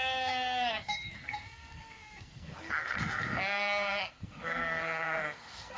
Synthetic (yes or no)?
yes